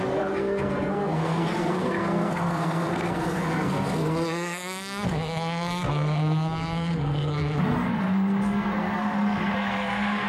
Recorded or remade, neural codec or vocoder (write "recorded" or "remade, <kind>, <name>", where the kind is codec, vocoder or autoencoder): remade, codec, SNAC